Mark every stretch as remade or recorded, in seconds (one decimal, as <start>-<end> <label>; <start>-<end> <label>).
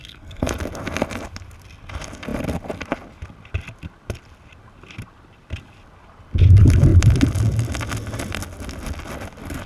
0.0-0.5 remade; 0.5-9.7 recorded